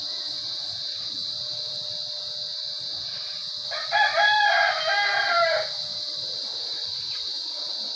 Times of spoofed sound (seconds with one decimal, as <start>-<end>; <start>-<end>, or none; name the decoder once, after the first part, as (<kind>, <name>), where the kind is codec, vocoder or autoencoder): 1.2-1.7 (vocoder, BigVGAN v2); 3.4-4.5; 5.2-7.6